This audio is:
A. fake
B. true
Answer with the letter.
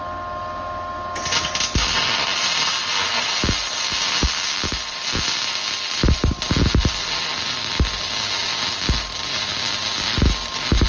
B